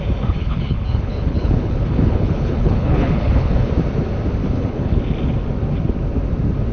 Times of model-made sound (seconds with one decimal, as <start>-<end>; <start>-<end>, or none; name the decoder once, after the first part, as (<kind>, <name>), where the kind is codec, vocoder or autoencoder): 0.4-3.7 (codec, HILCodec); 4.4-5.0